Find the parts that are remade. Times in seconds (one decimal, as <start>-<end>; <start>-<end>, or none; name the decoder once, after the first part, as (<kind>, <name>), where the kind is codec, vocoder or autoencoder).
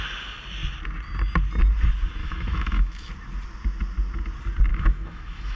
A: 2.2-3.1 (autoencoder, DAC-VAE); 4.7-5.6